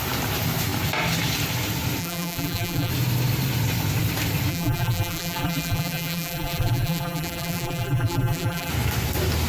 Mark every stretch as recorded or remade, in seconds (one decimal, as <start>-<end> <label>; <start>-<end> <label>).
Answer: 0.0-2.0 recorded; 2.0-2.9 remade; 2.9-4.5 recorded; 4.5-8.7 remade; 8.7-9.5 recorded